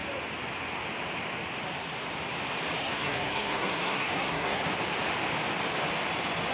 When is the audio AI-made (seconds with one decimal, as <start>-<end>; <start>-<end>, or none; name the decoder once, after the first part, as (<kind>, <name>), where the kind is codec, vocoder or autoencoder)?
2.8-4.6 (codec, SNAC)

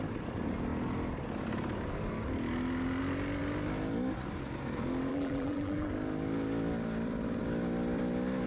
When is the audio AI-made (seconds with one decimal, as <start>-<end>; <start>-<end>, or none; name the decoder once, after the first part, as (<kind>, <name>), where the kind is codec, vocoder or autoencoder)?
5.1-5.9 (vocoder, BigVGAN v2)

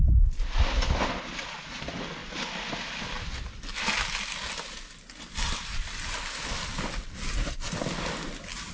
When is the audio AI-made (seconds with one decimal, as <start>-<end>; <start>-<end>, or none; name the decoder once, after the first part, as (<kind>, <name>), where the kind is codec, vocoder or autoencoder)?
none

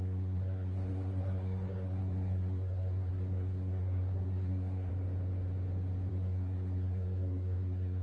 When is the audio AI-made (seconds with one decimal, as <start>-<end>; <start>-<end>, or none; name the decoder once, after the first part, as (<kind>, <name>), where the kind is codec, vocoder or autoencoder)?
0.0-4.9 (codec, SNAC); 6.1-8.0

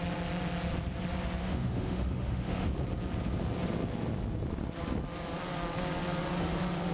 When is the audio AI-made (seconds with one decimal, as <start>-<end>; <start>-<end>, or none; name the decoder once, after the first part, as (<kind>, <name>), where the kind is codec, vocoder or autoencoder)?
1.4-2.7 (autoencoder, DAC-VAE)

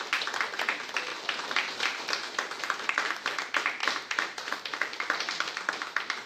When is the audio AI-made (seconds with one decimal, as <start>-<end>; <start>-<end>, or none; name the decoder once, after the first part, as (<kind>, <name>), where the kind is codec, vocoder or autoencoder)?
1.1-3.1 (vocoder, BigVGAN v2); 3.8-5.7